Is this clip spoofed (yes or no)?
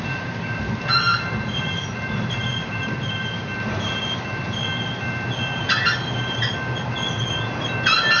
no